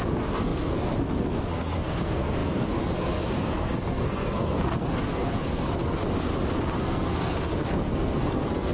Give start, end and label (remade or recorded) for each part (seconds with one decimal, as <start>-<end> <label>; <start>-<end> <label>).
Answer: 0.0-6.0 remade; 6.0-6.8 recorded; 6.8-8.7 remade